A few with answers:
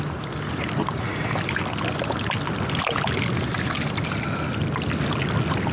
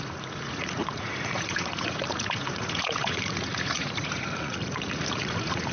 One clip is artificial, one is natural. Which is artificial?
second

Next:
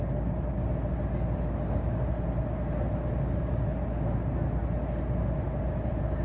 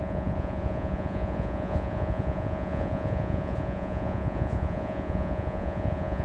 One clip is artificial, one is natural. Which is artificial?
second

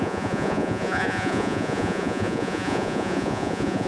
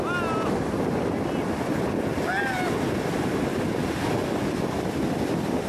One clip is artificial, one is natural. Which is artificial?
first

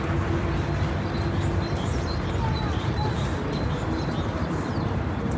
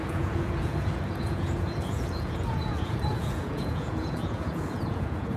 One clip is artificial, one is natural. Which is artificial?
second